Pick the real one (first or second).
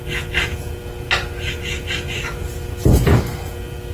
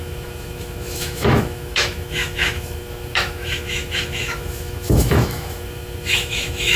first